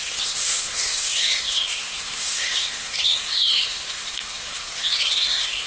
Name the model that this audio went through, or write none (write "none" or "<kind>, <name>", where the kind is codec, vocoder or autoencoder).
codec, SNAC